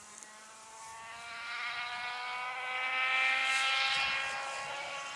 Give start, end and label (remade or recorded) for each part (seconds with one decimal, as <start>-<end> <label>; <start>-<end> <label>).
0.0-5.2 recorded